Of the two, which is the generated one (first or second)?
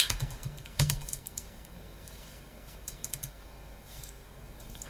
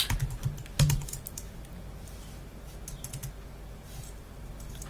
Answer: first